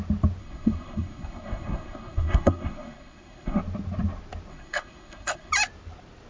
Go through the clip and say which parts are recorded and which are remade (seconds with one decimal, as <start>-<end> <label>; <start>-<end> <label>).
0.0-0.4 recorded; 0.4-3.6 remade; 3.6-4.5 recorded; 4.5-5.5 remade; 5.5-6.3 recorded